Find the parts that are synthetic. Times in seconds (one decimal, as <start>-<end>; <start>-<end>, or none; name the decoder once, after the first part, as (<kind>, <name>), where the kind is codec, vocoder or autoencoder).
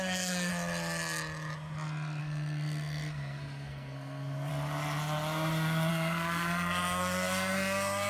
0.0-0.5 (codec, SNAC); 2.2-4.5; 5.9-8.1